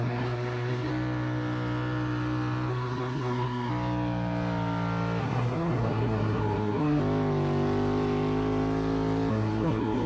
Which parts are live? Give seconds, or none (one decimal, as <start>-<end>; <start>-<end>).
0.9-2.7; 3.7-5.2; 7.0-9.3